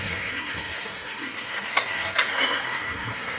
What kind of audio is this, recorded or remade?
remade